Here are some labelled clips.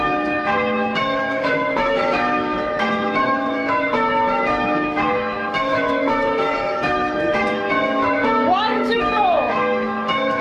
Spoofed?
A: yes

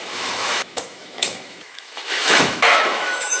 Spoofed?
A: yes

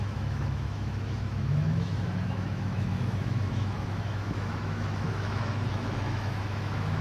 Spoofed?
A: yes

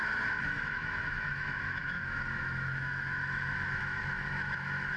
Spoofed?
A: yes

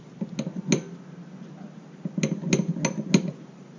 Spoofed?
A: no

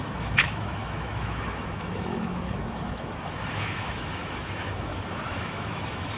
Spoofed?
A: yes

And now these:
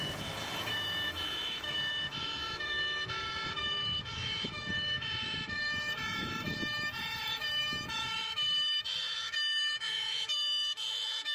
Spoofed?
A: yes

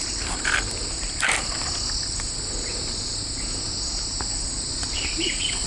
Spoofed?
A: no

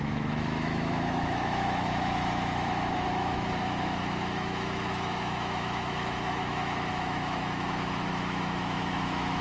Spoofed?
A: yes